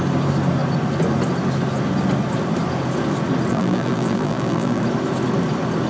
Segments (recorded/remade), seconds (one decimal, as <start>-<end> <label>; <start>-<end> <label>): 0.0-3.5 recorded; 3.5-4.8 remade; 4.8-5.9 recorded